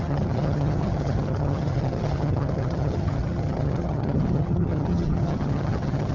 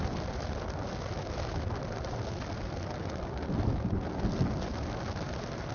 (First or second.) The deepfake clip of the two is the first